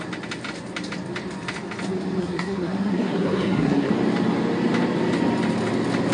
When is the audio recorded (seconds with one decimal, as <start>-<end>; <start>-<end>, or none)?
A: 0.0-2.2; 3.9-6.1